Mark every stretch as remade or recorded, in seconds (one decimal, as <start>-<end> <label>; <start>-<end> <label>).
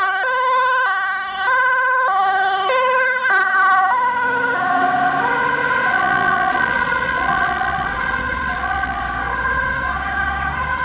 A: 0.0-5.9 recorded; 5.9-9.0 remade; 9.0-10.8 recorded